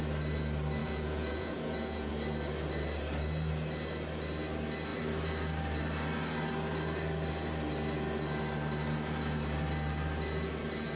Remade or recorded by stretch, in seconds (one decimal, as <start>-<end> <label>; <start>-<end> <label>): 0.0-0.8 recorded; 0.8-2.1 remade; 2.1-11.0 recorded

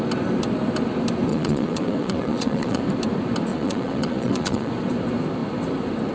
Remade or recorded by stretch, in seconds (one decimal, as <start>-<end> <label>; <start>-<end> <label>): 0.0-1.3 recorded; 1.3-2.8 remade; 2.8-3.5 recorded; 3.5-4.7 remade; 4.7-6.1 recorded

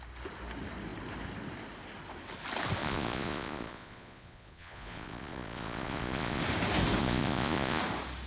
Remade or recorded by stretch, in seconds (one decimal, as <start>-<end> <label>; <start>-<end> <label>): 0.0-2.8 recorded; 2.8-6.4 remade; 6.4-7.0 recorded; 7.0-7.8 remade; 7.8-8.3 recorded

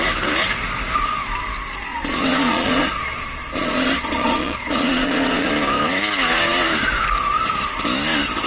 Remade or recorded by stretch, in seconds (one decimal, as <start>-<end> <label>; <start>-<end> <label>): 0.0-1.9 recorded; 1.9-5.5 remade; 5.5-8.5 recorded

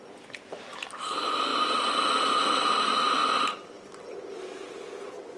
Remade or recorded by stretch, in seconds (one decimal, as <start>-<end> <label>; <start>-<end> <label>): 0.0-5.4 recorded

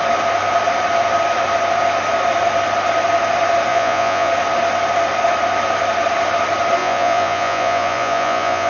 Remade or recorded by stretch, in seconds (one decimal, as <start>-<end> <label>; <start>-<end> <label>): 0.0-3.7 recorded; 3.7-4.3 remade; 4.3-6.8 recorded; 6.8-8.7 remade